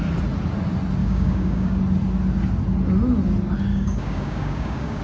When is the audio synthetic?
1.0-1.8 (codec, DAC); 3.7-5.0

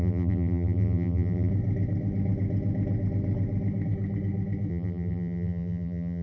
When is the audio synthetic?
0.0-1.5 (vocoder, BigVGAN v2); 4.7-6.2

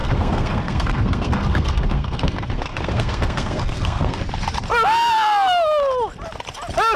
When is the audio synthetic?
0.0-4.2 (codec, SNAC)